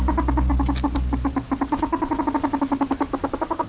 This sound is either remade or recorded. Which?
recorded